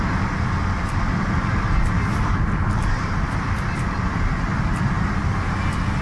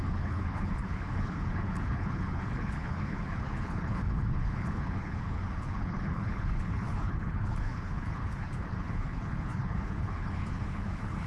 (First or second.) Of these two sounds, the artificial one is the second